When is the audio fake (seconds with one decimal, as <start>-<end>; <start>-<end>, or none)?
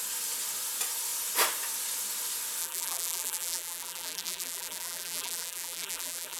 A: 2.6-6.4